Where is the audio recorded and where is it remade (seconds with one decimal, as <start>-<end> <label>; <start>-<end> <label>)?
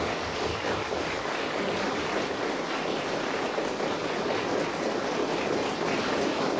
0.0-2.0 remade; 2.0-6.0 recorded; 6.0-6.6 remade